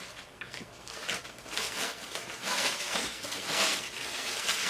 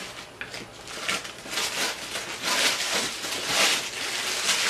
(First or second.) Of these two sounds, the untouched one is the second